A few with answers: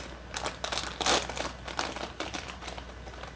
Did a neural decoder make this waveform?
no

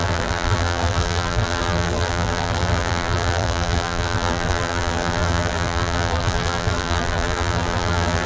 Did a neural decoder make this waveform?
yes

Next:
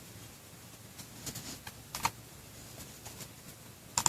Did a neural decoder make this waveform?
no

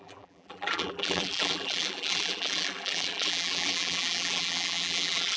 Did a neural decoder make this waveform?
yes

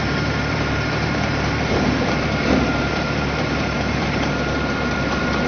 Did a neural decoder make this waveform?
yes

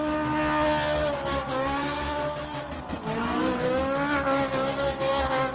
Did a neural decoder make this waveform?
no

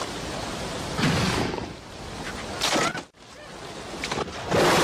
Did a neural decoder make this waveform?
no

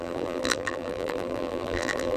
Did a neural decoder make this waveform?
yes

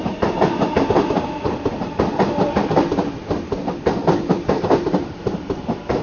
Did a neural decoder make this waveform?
yes